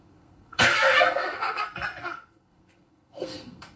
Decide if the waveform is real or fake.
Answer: fake